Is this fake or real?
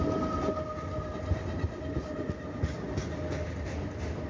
real